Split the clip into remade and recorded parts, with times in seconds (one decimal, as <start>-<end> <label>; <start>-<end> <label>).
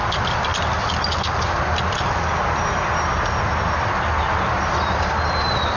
0.0-5.8 recorded